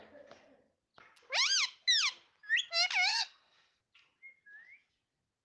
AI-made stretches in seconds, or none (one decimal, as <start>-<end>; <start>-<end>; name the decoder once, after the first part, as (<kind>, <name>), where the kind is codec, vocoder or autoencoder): 3.1-3.8 (codec, SNAC)